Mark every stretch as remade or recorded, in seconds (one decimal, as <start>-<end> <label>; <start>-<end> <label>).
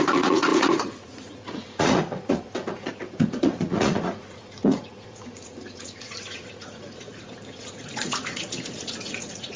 0.0-9.6 remade